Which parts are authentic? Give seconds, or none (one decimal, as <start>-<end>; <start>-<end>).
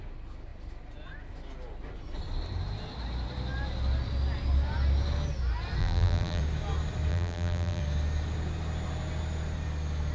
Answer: 0.0-5.8; 6.4-7.1; 7.8-10.1